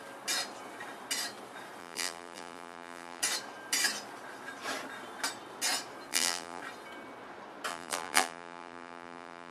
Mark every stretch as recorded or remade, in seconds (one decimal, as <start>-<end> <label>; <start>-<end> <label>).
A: 0.0-1.8 recorded; 1.8-3.2 remade; 3.2-6.1 recorded; 6.1-6.6 remade; 6.6-7.7 recorded; 7.7-9.5 remade